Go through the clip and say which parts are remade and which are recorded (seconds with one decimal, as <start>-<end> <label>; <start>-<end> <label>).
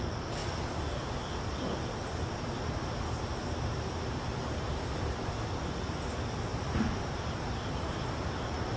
0.0-6.5 recorded; 6.5-8.8 remade